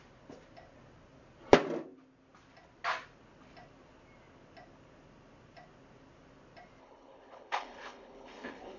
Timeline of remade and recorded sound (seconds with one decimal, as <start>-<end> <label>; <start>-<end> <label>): 0.0-6.8 recorded; 6.8-8.8 remade